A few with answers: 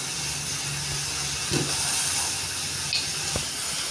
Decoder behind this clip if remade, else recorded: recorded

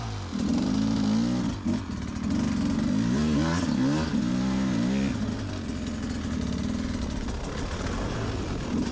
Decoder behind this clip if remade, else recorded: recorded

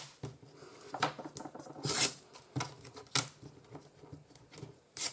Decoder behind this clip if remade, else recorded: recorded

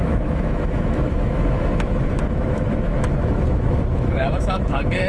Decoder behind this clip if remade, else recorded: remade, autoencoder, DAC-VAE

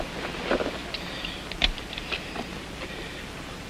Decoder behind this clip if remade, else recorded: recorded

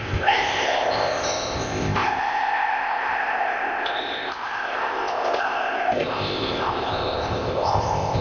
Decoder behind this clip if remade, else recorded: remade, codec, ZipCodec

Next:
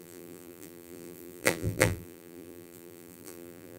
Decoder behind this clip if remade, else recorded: remade, vocoder, BigVGAN v2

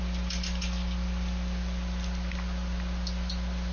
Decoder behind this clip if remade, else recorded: recorded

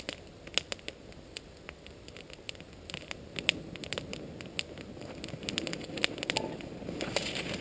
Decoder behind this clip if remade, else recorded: recorded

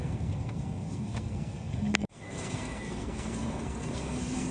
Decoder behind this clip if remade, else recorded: remade, codec, SNAC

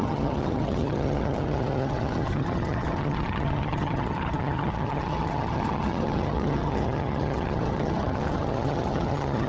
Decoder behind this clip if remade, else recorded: remade, vocoder, HiFi-GAN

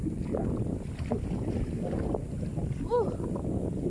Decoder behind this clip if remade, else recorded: recorded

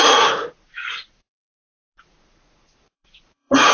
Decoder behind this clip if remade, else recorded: remade, vocoder, Vocos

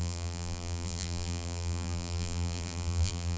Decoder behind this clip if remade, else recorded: remade, vocoder, BigVGAN v2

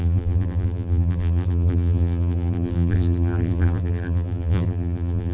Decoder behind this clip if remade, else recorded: remade, vocoder, BigVGAN v2